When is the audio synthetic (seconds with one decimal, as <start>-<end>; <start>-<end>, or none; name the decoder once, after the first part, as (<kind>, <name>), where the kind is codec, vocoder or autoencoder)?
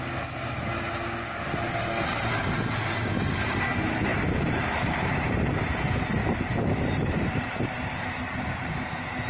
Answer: 2.1-2.7 (vocoder, BigVGAN v2); 4.1-5.4; 6.2-7.5